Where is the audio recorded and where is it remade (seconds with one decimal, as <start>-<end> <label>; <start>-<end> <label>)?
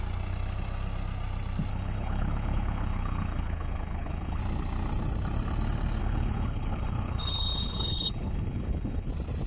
0.0-1.7 recorded; 1.7-4.4 remade; 4.4-6.0 recorded; 6.0-9.1 remade; 9.1-9.5 recorded